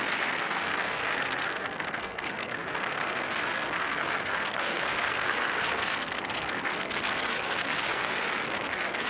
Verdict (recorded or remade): remade